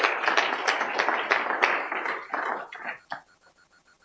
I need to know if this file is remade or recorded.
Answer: recorded